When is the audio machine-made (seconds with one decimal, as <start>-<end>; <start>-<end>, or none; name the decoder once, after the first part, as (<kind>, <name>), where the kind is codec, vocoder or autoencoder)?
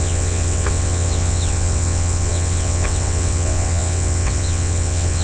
0.0-5.2 (vocoder, WaveNeXt)